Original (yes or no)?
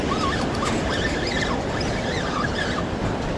yes